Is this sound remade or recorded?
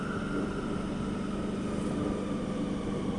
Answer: recorded